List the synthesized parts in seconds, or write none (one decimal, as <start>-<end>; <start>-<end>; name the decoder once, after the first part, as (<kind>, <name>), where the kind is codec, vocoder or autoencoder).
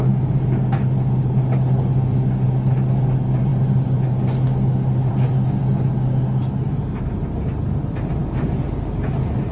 none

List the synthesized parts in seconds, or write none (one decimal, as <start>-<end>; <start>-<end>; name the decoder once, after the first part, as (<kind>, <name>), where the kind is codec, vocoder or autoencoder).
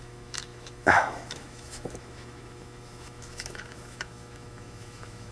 0.0-5.3 (autoencoder, DAC-VAE)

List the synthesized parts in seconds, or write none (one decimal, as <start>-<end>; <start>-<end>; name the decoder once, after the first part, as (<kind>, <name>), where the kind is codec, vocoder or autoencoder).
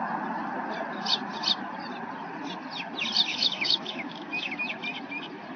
3.3-4.7 (autoencoder, DAC-VAE)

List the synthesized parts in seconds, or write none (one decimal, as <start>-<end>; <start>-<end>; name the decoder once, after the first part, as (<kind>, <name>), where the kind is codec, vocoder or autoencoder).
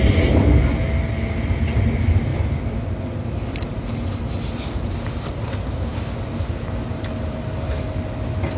none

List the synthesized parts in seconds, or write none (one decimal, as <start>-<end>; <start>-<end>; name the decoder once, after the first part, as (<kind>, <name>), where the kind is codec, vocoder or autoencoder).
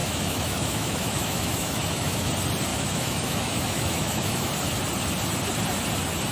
0.0-2.3 (autoencoder, DAC-VAE); 2.7-4.5